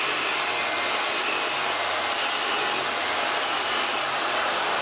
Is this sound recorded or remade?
recorded